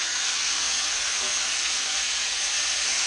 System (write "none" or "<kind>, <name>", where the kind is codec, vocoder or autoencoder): codec, SNAC